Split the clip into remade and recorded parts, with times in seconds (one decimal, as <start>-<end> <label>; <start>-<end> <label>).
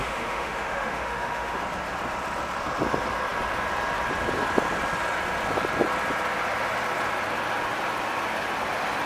0.0-1.6 remade; 1.6-9.1 recorded